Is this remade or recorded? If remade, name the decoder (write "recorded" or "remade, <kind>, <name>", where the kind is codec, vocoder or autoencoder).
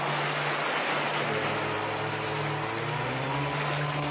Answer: recorded